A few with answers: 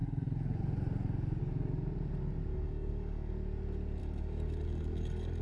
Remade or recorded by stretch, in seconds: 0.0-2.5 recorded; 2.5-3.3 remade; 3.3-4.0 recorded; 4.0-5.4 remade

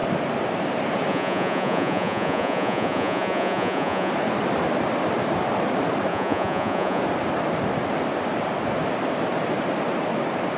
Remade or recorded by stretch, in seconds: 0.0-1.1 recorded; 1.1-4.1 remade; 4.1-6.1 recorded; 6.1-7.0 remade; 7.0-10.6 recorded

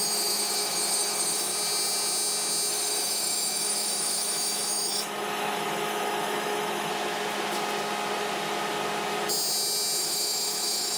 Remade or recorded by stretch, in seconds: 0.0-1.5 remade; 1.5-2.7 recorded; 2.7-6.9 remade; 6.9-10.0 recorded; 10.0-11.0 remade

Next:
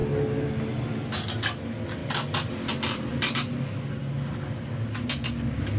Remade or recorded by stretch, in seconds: 0.0-5.8 recorded